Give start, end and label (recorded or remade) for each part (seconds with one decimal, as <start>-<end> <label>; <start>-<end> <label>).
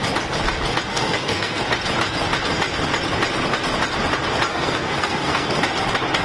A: 0.0-0.9 recorded; 0.9-1.6 remade; 1.6-4.5 recorded; 4.5-5.6 remade; 5.6-6.2 recorded